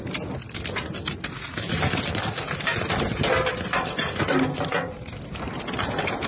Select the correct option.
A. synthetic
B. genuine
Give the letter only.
B